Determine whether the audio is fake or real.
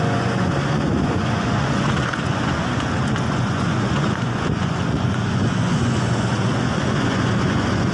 fake